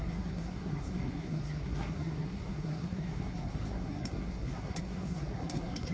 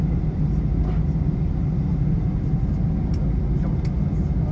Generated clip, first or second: first